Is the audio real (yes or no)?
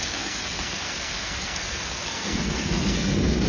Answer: no